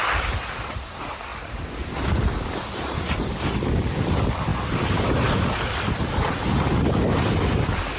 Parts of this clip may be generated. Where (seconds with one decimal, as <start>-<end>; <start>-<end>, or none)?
0.0-8.0